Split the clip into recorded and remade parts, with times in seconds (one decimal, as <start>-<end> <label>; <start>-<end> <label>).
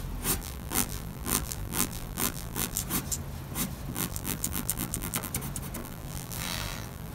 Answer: 0.0-0.4 recorded; 0.4-2.8 remade; 2.8-3.9 recorded; 3.9-5.3 remade; 5.3-5.8 recorded; 5.8-7.1 remade